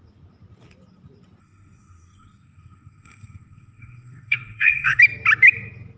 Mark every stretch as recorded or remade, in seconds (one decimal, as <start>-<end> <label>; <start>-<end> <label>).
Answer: 0.0-1.4 recorded; 1.4-5.0 remade; 5.0-6.0 recorded